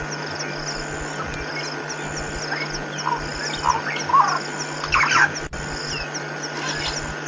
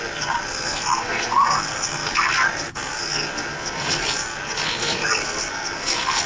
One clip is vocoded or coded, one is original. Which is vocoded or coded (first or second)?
second